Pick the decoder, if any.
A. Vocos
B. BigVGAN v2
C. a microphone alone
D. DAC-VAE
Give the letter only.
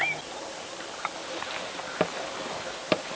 C